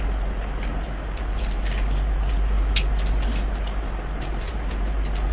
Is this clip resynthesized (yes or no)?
no